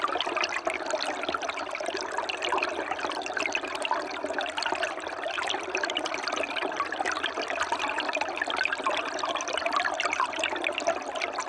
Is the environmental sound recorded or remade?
recorded